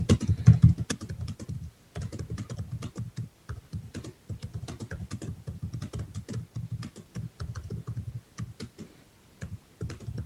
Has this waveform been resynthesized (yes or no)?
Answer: no